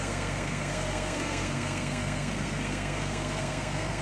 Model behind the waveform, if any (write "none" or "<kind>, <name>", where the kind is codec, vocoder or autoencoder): codec, SNAC